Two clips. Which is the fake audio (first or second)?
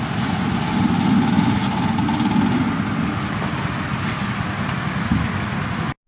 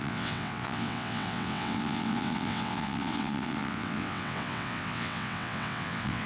second